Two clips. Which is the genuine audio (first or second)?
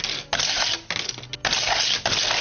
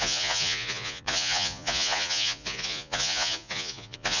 first